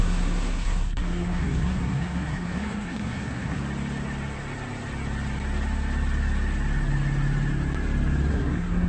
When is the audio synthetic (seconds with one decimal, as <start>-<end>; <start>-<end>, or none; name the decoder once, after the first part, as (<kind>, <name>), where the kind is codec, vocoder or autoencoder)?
0.0-3.6 (codec, SNAC); 8.3-8.9